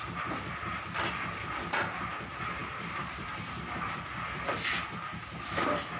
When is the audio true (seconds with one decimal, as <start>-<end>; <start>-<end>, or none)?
0.0-2.6; 4.7-6.0